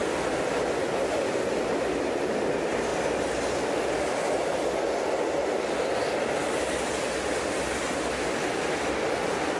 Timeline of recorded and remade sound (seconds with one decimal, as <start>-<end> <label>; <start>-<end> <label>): 0.0-9.6 recorded